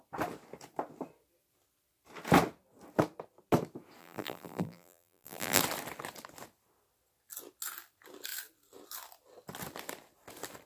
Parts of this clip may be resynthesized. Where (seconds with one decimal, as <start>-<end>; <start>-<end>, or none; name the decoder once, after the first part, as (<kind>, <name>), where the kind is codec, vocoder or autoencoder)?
4.0-5.6 (vocoder, BigVGAN v2)